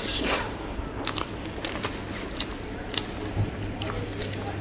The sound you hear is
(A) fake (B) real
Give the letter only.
B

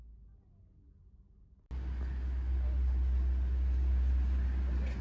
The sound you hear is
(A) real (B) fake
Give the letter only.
A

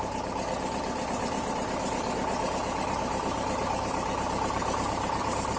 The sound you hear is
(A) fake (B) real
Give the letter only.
A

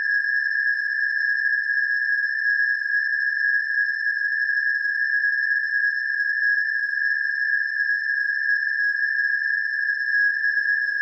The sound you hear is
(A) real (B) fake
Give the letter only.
B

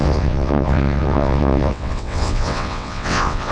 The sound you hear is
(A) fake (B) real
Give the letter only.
A